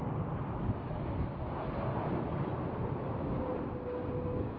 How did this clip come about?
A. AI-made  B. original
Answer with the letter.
B